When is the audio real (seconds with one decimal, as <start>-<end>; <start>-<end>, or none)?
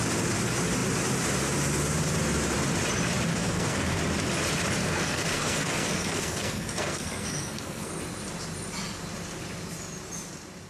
0.0-3.3; 4.0-4.8; 8.0-10.7